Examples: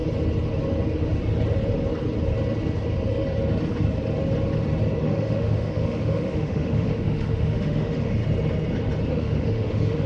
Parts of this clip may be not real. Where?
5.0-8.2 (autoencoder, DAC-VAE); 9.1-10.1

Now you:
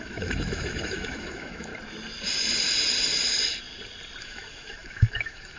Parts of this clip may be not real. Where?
0.0-1.7 (autoencoder, DAC-VAE); 4.2-5.6

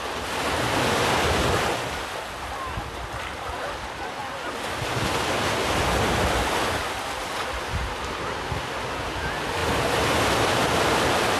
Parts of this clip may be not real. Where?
none

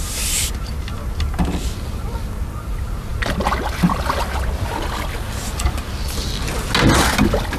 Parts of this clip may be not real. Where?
none

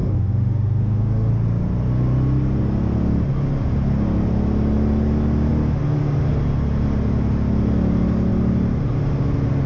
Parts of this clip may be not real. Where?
0.0-1.3 (autoencoder, DAC-VAE)